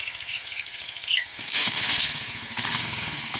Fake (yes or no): yes